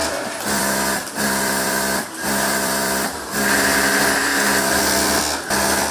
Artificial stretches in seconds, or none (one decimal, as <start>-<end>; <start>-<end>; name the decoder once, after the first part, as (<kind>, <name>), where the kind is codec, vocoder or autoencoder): 0.0-3.5 (vocoder, BigVGAN v2)